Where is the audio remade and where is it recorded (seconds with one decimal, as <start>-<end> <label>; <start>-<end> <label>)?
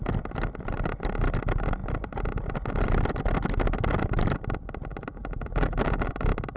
0.0-4.9 recorded; 4.9-6.1 remade; 6.1-6.6 recorded